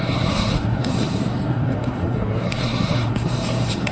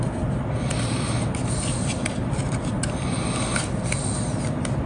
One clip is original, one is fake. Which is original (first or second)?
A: second